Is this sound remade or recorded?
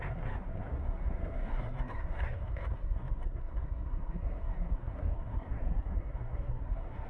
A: remade